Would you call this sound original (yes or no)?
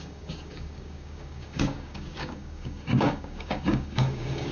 no